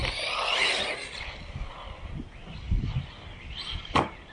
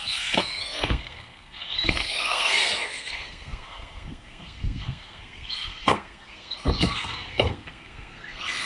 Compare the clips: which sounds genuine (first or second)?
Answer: first